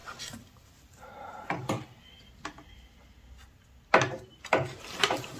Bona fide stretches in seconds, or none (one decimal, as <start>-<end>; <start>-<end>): 0.0-0.7; 1.1-4.3